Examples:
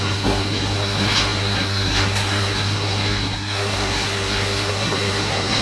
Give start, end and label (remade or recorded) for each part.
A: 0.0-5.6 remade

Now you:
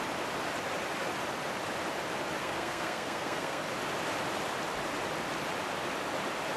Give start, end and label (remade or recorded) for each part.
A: 0.0-2.4 recorded; 2.4-3.6 remade; 3.6-6.6 recorded

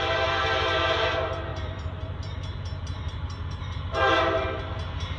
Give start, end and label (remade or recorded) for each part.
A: 0.0-1.5 recorded; 1.5-4.6 remade; 4.6-5.2 recorded

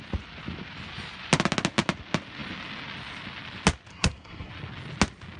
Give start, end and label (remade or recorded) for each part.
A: 0.0-3.9 recorded; 3.9-4.5 remade; 4.5-5.4 recorded